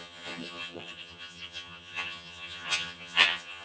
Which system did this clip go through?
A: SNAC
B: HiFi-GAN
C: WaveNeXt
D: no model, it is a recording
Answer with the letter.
B